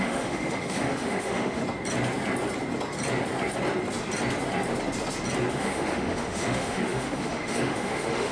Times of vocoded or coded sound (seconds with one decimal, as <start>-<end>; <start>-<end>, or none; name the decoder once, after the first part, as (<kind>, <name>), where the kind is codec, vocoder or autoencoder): 0.0-1.6 (autoencoder, DAC-VAE); 5.5-8.3